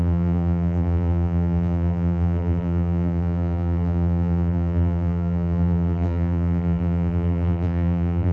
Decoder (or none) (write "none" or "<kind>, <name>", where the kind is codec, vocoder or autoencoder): vocoder, BigVGAN v2